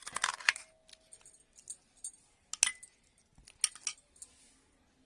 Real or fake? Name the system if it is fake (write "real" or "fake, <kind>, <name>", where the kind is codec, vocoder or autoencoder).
real